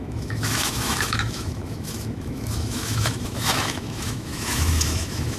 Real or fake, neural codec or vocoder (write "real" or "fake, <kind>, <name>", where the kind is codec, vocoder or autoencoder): fake, autoencoder, DAC-VAE